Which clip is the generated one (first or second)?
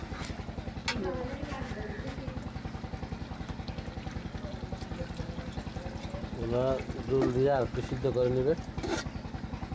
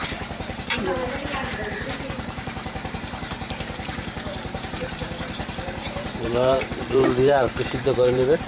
second